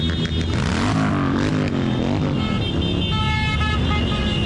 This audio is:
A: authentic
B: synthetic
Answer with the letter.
A